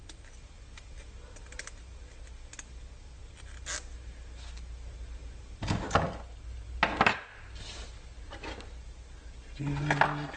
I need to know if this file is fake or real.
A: real